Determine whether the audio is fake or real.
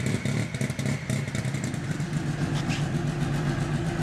fake